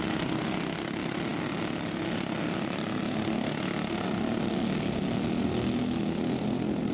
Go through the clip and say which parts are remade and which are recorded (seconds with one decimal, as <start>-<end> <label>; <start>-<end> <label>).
0.0-6.9 recorded